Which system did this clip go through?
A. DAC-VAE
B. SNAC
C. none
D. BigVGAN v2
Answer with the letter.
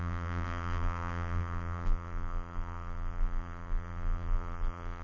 D